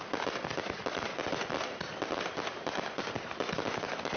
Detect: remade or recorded recorded